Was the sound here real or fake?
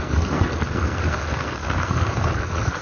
fake